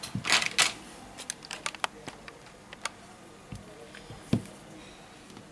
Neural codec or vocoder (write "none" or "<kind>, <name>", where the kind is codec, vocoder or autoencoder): none